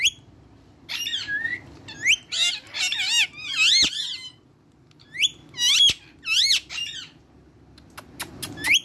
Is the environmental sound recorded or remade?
recorded